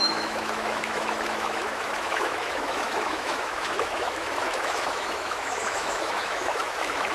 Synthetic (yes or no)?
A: yes